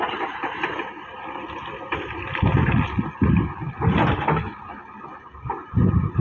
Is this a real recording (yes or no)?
yes